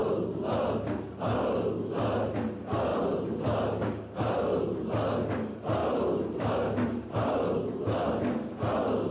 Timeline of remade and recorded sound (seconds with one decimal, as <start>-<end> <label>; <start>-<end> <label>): 0.0-9.1 recorded

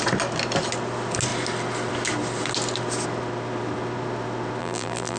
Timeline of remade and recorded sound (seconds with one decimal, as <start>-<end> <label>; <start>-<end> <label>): 0.0-4.6 recorded; 4.6-5.2 remade

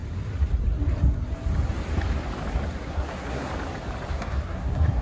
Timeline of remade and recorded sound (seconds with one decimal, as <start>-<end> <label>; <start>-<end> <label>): 0.0-2.7 recorded; 2.7-3.5 remade; 3.5-4.1 recorded; 4.1-5.0 remade

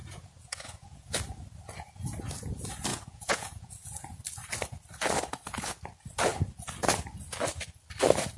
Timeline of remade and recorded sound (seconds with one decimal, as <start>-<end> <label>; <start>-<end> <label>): 0.0-1.1 remade; 1.1-2.9 recorded; 2.9-3.7 remade; 3.7-8.4 recorded